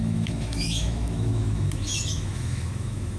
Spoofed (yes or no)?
yes